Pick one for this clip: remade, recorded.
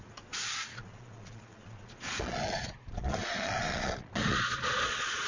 remade